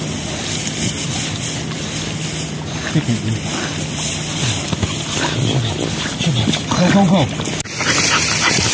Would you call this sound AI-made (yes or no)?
no